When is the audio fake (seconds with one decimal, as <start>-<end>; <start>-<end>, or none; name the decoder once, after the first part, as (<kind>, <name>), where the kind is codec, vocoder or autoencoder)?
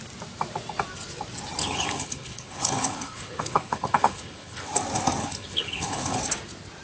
1.6-4.6 (codec, HILCodec); 5.2-6.2